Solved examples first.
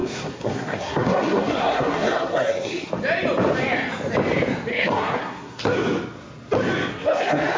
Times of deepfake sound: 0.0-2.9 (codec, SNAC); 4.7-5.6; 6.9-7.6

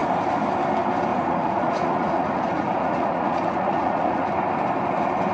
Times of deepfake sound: 1.1-4.3 (vocoder, Vocos)

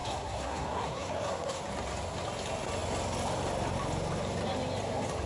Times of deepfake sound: 0.0-1.6 (codec, SNAC)